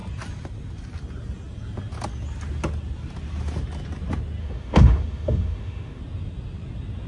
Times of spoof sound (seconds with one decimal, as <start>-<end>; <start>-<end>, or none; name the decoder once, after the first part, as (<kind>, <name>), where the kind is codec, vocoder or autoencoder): 4.4-6.0 (autoencoder, DAC-VAE)